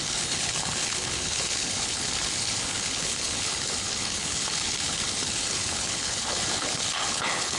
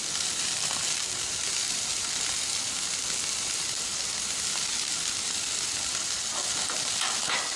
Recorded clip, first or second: second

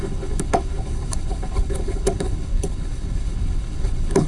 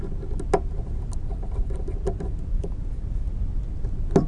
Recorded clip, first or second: second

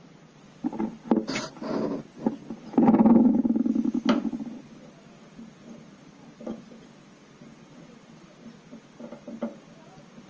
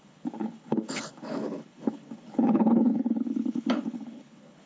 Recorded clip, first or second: first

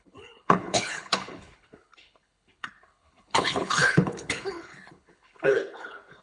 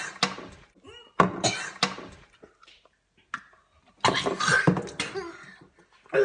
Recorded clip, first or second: second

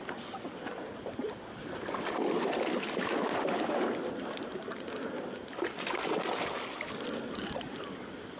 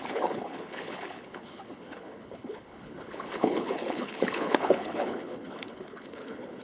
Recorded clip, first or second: first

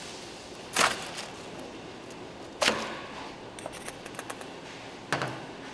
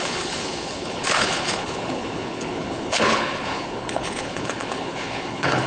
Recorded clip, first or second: first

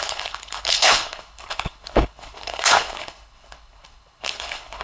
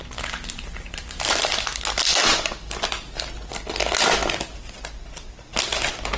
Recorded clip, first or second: second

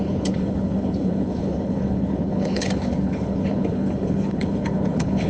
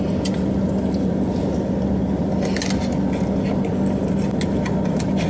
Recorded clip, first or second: second